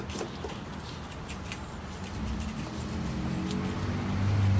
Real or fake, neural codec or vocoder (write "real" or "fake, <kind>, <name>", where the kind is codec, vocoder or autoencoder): real